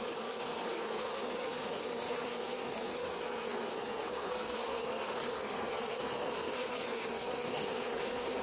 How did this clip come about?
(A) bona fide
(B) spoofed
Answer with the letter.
B